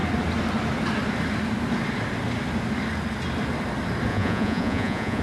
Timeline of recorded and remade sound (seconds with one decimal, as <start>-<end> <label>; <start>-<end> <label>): 0.0-4.1 recorded; 4.1-5.2 remade